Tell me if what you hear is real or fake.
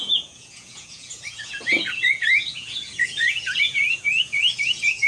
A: fake